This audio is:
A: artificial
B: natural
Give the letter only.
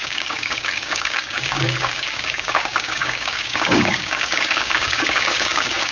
A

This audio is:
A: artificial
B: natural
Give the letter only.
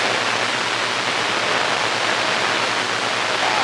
B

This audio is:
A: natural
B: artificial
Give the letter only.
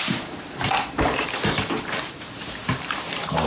B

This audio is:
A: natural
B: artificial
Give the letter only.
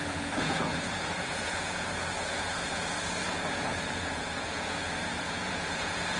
B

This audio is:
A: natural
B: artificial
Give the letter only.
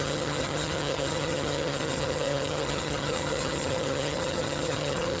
B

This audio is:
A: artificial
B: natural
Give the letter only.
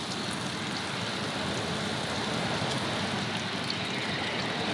B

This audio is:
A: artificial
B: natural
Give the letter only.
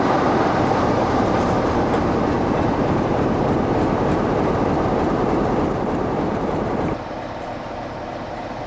A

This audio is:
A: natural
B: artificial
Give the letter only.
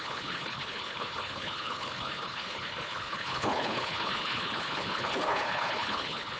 B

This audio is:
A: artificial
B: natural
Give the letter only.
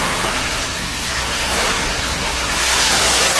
A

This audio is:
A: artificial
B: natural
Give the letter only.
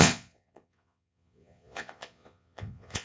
A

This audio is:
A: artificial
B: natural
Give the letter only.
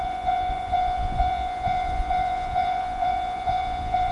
A